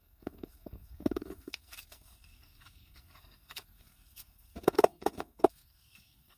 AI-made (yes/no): yes